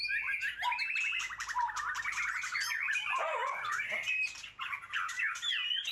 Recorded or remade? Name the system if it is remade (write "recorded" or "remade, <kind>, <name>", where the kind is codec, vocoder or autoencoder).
recorded